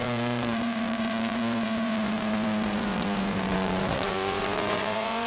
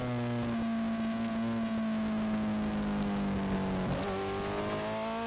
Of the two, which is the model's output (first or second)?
first